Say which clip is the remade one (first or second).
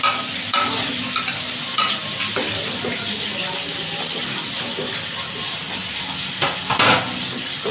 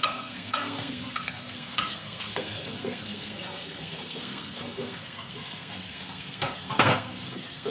second